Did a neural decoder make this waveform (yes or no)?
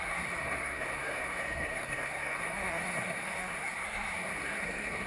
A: yes